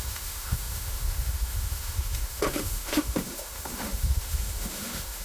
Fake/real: fake